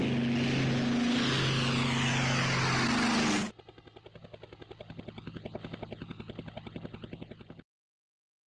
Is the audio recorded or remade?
recorded